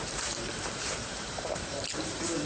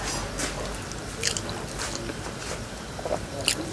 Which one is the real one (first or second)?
second